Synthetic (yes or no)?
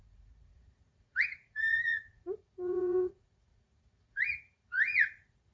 yes